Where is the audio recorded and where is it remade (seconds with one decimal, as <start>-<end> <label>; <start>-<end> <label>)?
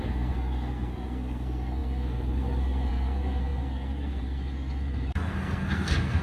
0.0-6.2 remade